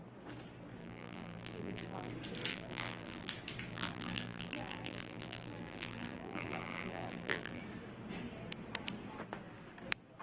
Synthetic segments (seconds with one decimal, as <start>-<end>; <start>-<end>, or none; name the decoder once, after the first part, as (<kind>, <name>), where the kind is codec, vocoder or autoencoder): 0.8-2.1 (vocoder, BigVGAN v2); 2.5-3.3; 3.7-7.6